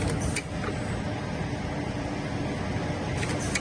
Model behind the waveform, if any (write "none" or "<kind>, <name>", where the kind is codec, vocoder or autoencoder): none